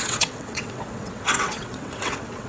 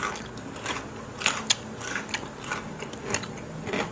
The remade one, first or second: first